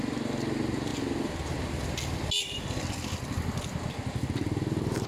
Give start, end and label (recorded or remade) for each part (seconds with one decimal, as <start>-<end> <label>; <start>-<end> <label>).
0.0-5.1 recorded